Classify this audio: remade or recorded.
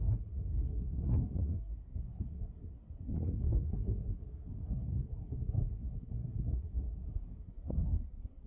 remade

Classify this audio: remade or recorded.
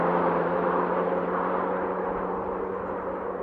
remade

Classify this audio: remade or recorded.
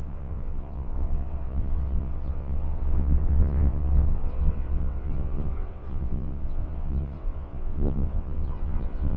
remade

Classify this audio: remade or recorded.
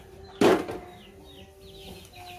recorded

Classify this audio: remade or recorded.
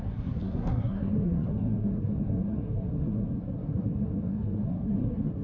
remade